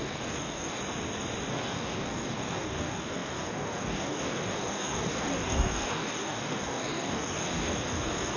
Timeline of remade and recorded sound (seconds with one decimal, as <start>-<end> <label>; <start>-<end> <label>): 0.0-0.8 remade; 0.8-1.5 recorded; 1.5-8.4 remade